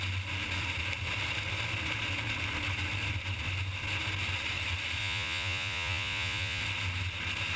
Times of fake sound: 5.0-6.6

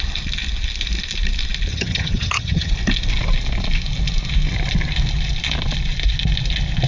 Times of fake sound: 1.7-2.7